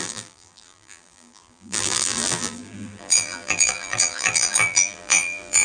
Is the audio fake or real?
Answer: fake